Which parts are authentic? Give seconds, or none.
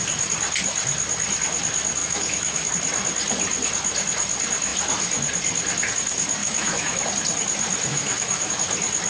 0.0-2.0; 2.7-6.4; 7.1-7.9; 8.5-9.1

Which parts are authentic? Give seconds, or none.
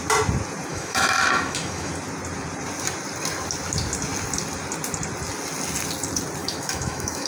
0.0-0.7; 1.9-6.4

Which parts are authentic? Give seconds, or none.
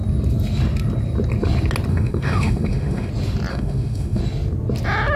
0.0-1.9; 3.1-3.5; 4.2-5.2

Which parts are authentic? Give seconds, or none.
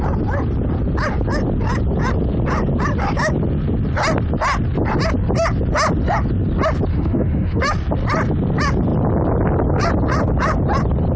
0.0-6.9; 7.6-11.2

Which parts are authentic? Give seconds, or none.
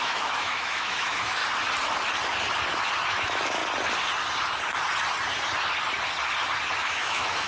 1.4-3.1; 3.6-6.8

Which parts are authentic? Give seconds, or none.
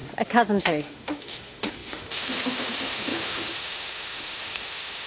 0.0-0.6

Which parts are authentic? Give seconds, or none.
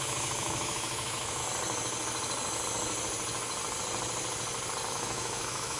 1.4-4.9